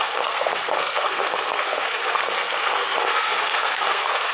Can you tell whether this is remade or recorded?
remade